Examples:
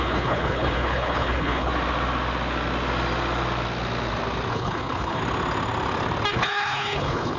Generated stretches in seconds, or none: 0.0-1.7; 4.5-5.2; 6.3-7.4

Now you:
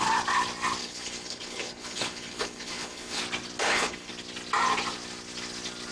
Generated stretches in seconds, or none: 0.8-3.2; 3.6-4.1

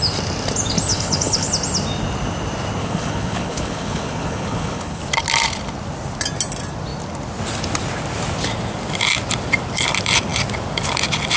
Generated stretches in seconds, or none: 0.9-1.5; 2.8-5.0

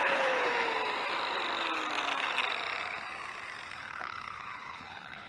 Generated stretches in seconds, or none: 0.0-0.5; 3.7-5.3